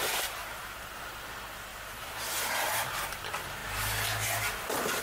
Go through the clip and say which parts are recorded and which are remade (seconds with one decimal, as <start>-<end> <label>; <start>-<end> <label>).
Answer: 0.0-0.4 recorded; 0.4-1.0 remade; 1.0-1.7 recorded; 1.7-2.2 remade; 2.2-5.0 recorded